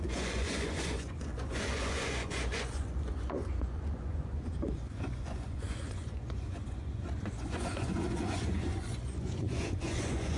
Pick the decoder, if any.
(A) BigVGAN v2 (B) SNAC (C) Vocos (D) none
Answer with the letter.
C